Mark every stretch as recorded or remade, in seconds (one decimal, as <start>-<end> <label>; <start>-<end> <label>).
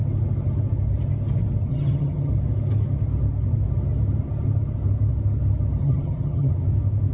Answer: 0.0-1.7 recorded; 1.7-2.3 remade; 2.3-5.8 recorded; 5.8-6.5 remade; 6.5-7.1 recorded